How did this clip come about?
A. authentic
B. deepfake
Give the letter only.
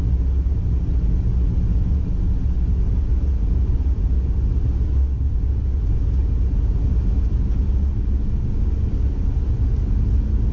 A